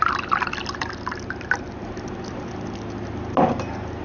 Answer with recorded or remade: recorded